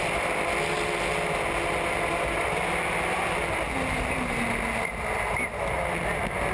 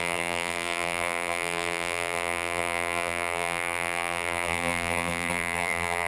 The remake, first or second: second